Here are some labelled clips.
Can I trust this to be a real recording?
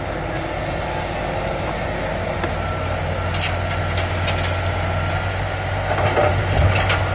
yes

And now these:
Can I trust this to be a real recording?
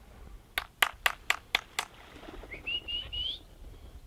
yes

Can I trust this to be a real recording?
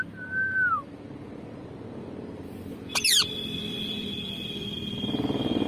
yes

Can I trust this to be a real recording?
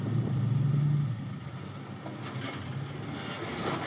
yes